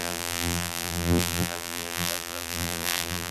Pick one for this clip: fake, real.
fake